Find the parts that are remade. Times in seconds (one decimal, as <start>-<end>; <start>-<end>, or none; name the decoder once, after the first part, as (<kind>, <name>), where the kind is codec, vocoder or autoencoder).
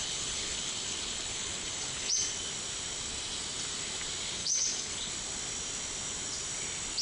0.0-2.1 (codec, HILCodec); 4.4-5.1